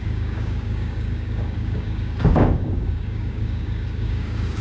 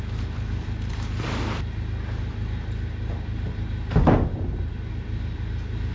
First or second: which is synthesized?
first